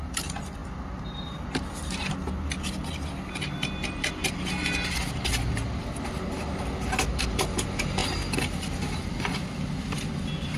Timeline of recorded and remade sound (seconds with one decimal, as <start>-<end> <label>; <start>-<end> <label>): 0.0-10.6 recorded